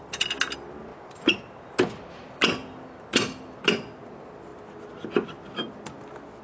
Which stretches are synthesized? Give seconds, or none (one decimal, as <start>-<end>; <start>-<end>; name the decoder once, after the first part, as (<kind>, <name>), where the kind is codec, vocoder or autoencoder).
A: none

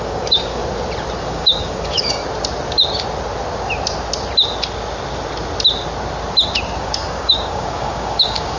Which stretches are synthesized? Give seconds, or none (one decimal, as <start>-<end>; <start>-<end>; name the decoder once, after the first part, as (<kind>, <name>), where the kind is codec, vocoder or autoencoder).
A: 0.0-0.6 (codec, DAC); 1.2-2.2; 6.8-8.6

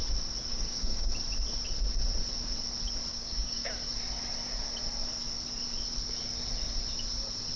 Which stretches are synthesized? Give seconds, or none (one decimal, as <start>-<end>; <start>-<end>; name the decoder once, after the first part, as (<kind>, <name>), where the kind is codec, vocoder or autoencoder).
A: 0.5-1.1 (codec, DAC); 3.1-3.7

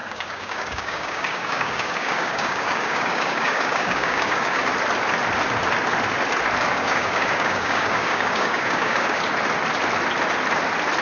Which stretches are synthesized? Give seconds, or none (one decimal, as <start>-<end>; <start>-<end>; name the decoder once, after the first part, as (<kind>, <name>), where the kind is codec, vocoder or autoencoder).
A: 0.0-4.6 (codec, DAC); 6.7-9.2

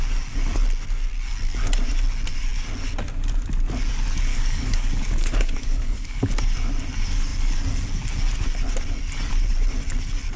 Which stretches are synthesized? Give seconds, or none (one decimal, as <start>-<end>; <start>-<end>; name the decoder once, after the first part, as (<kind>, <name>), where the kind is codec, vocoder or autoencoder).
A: 4.3-6.3 (codec, DAC)

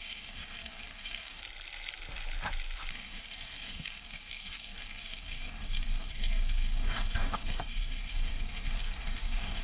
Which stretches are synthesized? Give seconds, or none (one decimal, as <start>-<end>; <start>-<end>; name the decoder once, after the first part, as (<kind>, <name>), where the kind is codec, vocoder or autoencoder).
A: 0.0-1.4 (codec, DAC); 2.9-9.6